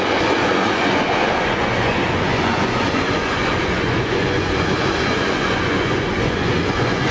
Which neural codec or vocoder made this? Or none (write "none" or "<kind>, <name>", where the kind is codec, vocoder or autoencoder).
vocoder, Vocos